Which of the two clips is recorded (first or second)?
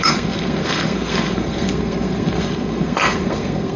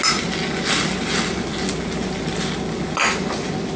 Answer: second